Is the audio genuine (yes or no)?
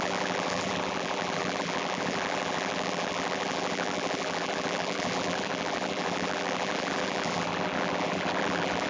no